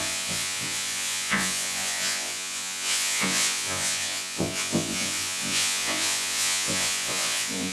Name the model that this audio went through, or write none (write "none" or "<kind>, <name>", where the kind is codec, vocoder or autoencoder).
vocoder, Vocos